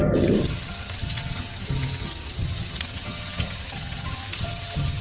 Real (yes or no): no